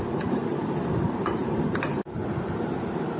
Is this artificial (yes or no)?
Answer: yes